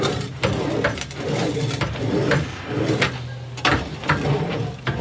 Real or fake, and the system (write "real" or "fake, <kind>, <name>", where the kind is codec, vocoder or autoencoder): fake, vocoder, BigVGAN v2